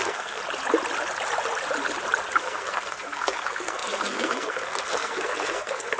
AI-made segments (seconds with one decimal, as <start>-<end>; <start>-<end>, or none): 0.0-0.4; 2.4-6.0